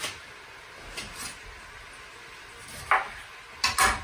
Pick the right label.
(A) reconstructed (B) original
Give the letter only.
B